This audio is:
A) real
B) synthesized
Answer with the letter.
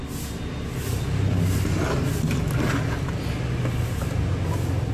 A